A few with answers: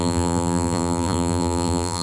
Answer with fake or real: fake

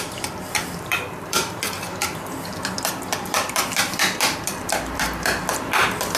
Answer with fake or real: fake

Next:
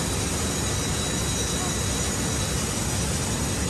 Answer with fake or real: real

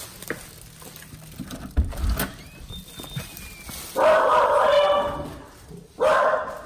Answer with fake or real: real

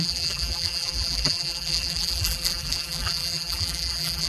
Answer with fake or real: fake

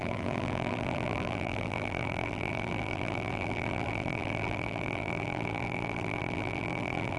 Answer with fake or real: fake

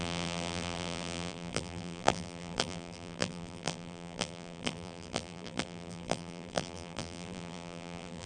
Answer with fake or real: fake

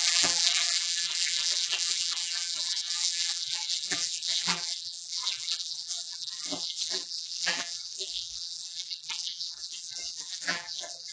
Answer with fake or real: fake